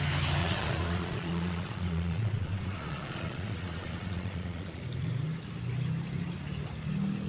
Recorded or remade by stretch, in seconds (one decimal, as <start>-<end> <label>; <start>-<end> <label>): 0.0-0.4 recorded; 0.4-4.8 remade; 4.8-7.3 recorded